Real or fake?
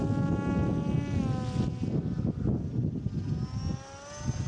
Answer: real